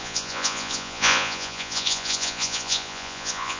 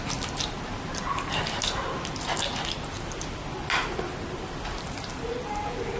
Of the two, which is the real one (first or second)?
second